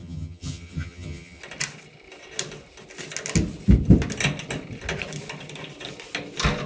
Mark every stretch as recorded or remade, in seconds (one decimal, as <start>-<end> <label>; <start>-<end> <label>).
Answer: 0.0-1.4 remade; 1.4-6.7 recorded